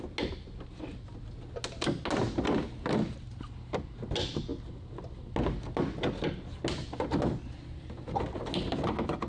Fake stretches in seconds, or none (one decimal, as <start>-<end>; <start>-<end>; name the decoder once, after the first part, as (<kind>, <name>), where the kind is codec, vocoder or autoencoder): none